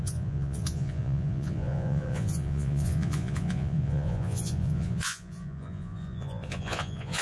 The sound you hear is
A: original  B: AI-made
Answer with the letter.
B